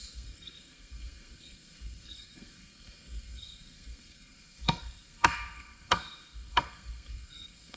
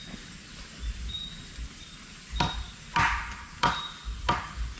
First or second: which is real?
second